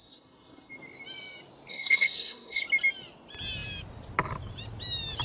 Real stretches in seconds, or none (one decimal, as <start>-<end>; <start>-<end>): 0.7-1.7; 2.6-5.2